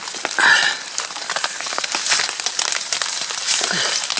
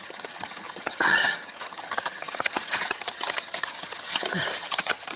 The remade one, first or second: second